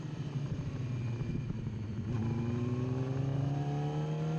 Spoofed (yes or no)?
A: no